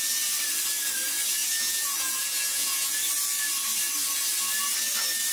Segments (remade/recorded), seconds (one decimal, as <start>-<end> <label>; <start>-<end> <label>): 0.0-1.4 recorded; 1.4-2.9 remade; 2.9-5.3 recorded